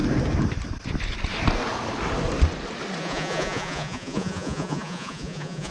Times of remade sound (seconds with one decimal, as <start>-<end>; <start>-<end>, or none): 3.0-5.7